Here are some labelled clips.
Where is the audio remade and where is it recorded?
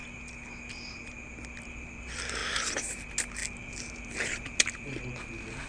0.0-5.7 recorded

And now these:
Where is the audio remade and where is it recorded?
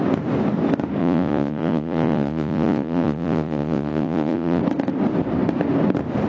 0.0-1.0 recorded; 1.0-4.6 remade; 4.6-6.3 recorded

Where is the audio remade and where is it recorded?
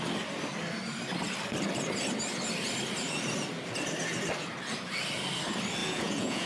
0.0-5.8 recorded; 5.8-6.5 remade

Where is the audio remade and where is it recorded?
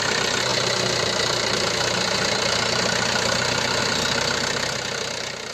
0.0-5.5 recorded